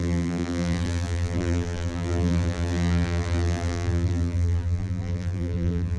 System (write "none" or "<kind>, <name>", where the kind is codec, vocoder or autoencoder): vocoder, BigVGAN v2